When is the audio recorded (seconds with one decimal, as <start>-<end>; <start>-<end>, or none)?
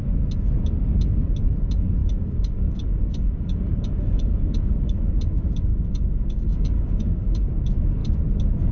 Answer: 0.0-2.0; 5.1-5.7; 7.5-8.7